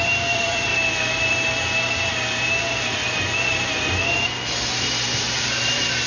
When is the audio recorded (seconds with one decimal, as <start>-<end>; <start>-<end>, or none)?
0.7-1.3; 3.0-5.3